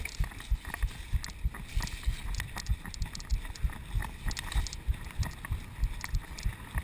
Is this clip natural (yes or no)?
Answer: yes